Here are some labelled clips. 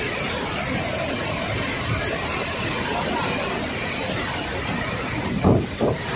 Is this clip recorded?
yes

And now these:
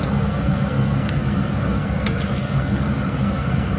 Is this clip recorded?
no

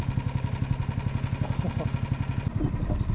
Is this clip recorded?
yes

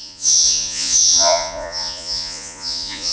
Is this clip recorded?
no